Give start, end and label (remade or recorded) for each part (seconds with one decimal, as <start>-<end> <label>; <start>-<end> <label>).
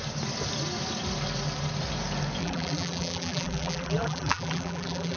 0.0-2.4 recorded; 2.4-5.2 remade